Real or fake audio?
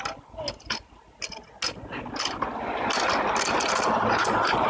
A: real